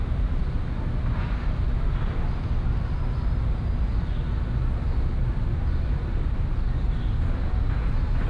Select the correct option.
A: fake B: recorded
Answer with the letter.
B